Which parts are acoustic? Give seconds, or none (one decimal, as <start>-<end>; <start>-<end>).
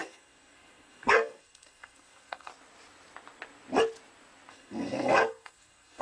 2.5-4.5